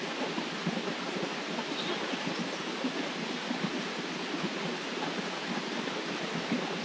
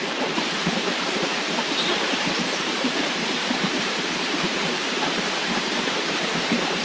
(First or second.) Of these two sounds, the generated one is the second